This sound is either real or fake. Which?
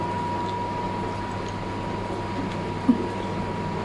real